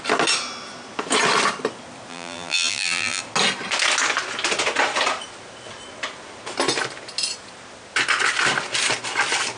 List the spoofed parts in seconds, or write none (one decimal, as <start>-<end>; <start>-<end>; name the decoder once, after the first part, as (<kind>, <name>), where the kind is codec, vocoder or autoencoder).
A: 2.1-3.2 (vocoder, BigVGAN v2)